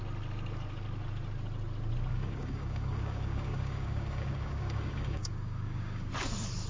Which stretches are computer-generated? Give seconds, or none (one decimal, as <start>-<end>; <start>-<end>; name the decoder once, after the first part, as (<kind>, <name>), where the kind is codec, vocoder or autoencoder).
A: 2.1-6.1 (codec, DAC)